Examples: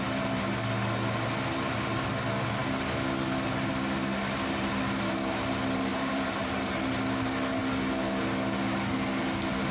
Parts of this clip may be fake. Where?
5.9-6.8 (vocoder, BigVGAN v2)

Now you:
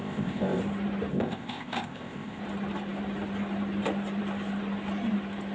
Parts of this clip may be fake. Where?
0.0-0.6 (codec, ZipCodec); 1.1-2.4

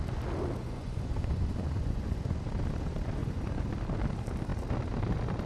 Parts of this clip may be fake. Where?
0.6-2.4 (vocoder, Vocos); 3.2-3.7